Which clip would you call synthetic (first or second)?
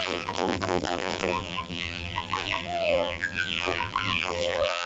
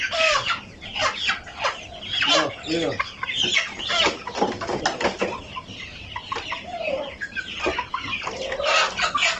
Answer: first